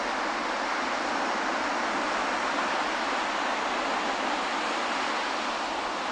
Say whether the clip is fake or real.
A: real